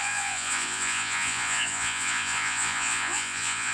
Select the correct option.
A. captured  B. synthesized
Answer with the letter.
B